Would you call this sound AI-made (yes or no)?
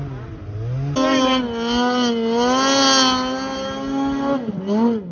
no